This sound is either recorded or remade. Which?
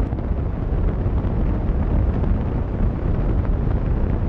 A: recorded